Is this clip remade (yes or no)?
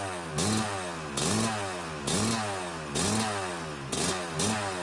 no